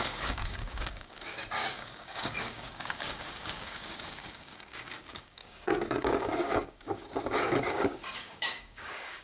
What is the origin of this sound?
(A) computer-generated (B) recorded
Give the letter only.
A